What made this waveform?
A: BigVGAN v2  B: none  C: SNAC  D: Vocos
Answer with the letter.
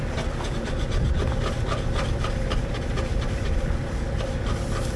B